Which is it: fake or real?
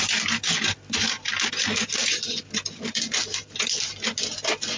real